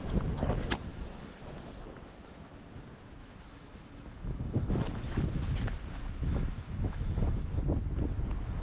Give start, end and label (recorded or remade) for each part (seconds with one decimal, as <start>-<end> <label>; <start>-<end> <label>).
0.0-0.9 recorded; 0.9-1.4 remade; 1.4-3.2 recorded; 3.2-5.2 remade; 5.2-6.3 recorded; 6.3-7.5 remade; 7.5-8.6 recorded